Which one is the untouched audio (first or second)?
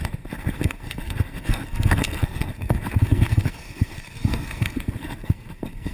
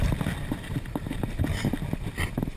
second